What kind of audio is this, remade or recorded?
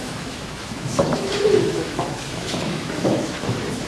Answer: remade